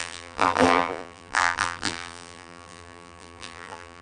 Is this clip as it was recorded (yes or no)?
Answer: no